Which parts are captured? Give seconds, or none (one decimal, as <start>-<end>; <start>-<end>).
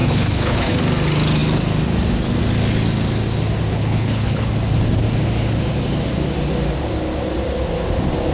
0.8-3.7; 4.5-8.3